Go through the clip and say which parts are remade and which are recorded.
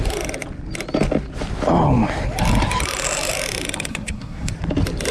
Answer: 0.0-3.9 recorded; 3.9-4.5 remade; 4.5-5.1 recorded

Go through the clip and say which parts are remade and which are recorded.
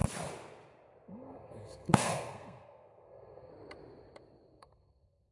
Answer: 0.0-1.1 recorded; 1.1-3.5 remade; 3.5-4.6 recorded; 4.6-5.3 remade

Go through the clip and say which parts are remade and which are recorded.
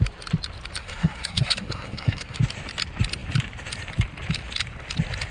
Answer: 0.0-0.8 recorded; 0.8-2.4 remade; 2.4-5.3 recorded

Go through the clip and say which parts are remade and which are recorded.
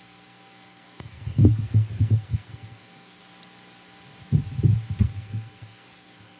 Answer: 0.0-3.2 remade; 3.2-5.0 recorded; 5.0-6.4 remade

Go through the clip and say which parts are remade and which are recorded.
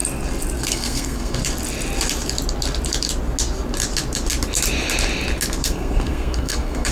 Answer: 0.0-0.7 recorded; 0.7-1.4 remade; 1.4-5.5 recorded; 5.5-6.9 remade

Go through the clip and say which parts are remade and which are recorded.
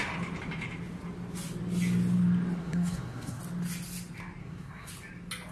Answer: 0.0-2.6 recorded; 2.6-3.4 remade; 3.4-4.4 recorded; 4.4-4.9 remade; 4.9-5.5 recorded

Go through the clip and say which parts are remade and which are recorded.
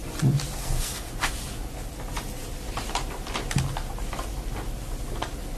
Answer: 0.0-0.6 recorded; 0.6-1.1 remade; 1.1-5.6 recorded